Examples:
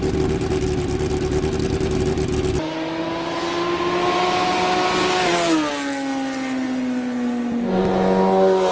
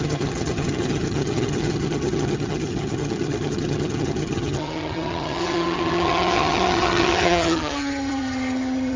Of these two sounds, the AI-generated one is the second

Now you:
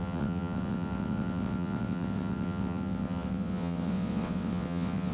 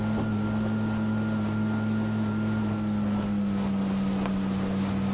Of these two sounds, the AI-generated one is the first